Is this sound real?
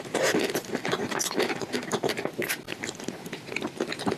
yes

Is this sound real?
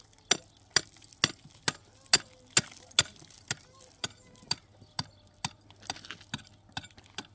yes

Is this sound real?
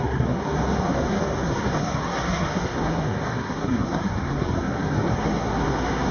no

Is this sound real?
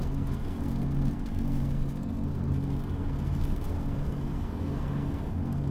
no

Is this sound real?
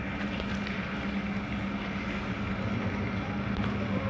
yes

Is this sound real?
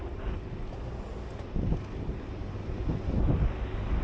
yes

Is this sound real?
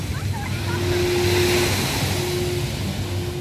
yes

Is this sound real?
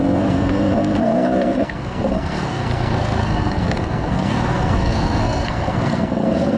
no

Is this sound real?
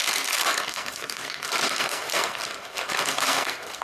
no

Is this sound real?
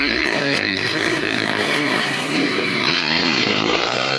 no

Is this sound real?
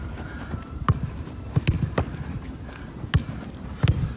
yes